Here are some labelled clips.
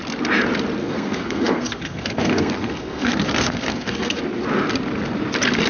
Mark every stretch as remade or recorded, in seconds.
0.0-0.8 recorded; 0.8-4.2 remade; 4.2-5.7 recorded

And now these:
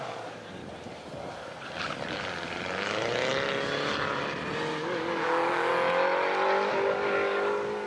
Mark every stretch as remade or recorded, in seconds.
0.0-0.6 remade; 0.6-4.8 recorded; 4.8-5.7 remade; 5.7-6.7 recorded; 6.7-7.9 remade

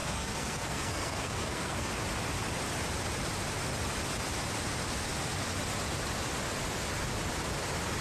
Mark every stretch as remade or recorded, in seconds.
0.0-1.9 remade; 1.9-8.0 recorded

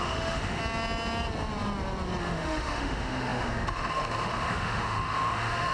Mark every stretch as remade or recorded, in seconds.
0.0-0.6 remade; 0.6-2.2 recorded; 2.2-5.7 remade

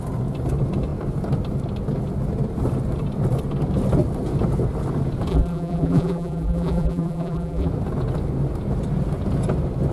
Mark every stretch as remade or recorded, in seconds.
0.0-5.3 recorded; 5.3-7.7 remade; 7.7-9.9 recorded

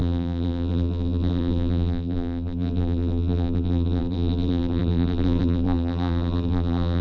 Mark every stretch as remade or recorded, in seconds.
0.0-7.0 remade

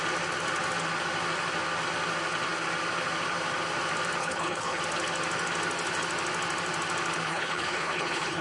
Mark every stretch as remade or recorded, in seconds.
0.0-4.2 recorded; 4.2-4.8 remade; 4.8-7.3 recorded; 7.3-8.4 remade

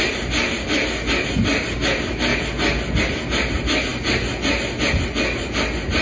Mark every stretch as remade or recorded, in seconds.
0.0-6.0 recorded